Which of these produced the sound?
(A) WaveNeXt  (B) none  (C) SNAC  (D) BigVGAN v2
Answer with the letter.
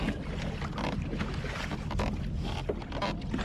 B